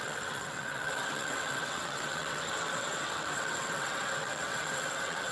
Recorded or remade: remade